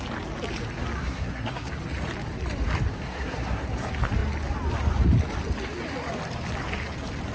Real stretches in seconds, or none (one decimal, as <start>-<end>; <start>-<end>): 0.0-1.0; 1.7-2.9; 3.6-7.3